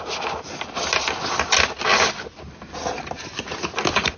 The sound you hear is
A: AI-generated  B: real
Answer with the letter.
B